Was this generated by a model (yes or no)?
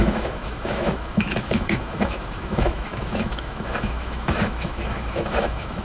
yes